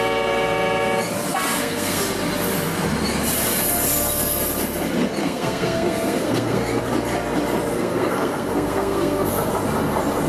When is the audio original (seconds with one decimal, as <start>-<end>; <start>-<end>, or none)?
0.0-1.3; 2.0-5.2; 6.8-7.7; 9.5-10.3